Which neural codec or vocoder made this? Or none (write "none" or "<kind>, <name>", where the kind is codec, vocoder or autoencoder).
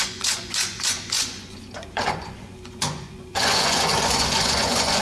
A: vocoder, Vocos